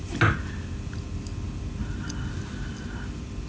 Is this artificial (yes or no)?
no